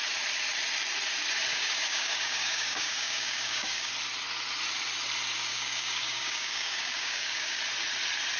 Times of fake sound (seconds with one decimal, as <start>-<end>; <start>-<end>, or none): 1.5-3.9; 5.5-7.6